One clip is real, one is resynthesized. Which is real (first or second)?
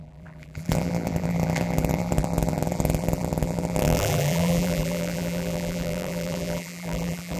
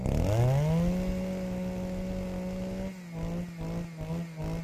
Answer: second